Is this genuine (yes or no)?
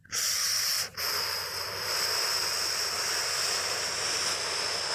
no